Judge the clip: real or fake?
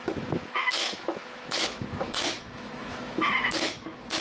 fake